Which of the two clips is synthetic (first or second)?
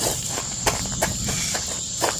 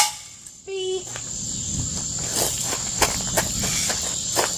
first